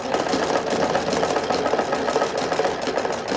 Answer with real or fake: real